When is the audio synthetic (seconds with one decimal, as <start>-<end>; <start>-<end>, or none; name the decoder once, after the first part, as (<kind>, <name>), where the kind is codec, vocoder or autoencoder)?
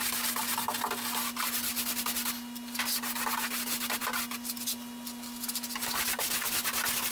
none